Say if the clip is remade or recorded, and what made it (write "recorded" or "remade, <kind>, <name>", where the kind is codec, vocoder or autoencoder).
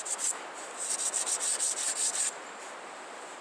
recorded